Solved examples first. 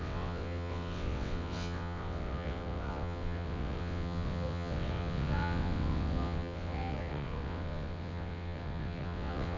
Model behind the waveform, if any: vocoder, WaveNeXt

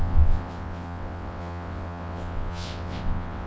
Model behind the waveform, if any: vocoder, WaveNeXt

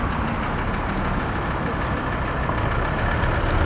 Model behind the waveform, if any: none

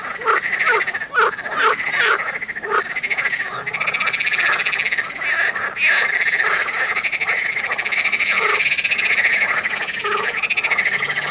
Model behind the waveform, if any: none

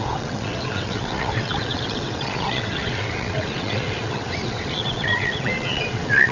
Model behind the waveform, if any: vocoder, WaveNeXt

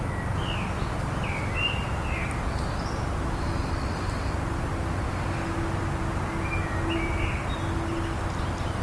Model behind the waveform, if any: none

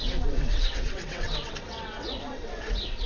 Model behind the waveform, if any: vocoder, WaveNeXt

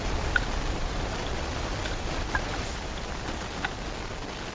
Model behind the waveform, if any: none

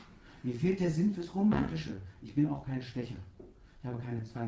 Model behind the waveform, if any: vocoder, WaveNeXt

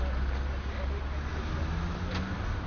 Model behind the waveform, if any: none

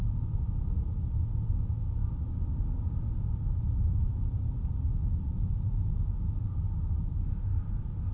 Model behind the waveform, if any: none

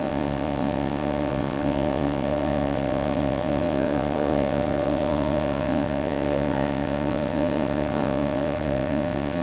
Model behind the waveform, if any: vocoder, WaveNeXt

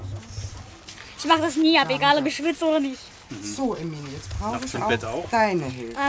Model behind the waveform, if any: none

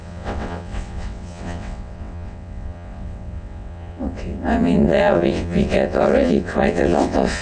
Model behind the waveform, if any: vocoder, WaveNeXt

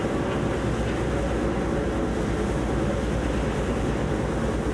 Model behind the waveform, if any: none